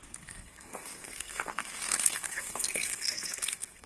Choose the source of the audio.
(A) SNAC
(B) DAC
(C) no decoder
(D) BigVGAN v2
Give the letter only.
A